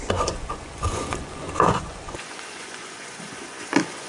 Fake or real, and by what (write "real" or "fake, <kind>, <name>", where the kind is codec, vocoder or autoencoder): fake, vocoder, Vocos